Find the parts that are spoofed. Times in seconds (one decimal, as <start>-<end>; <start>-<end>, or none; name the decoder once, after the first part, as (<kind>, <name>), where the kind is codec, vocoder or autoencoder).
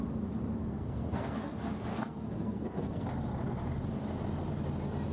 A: 0.6-1.5 (codec, SNAC); 1.9-3.1